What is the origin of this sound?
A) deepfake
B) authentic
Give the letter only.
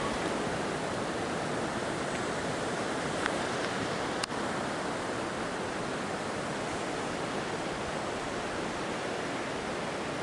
B